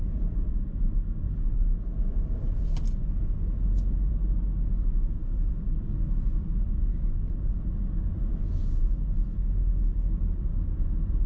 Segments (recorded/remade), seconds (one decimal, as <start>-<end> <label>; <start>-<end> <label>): 0.0-11.3 recorded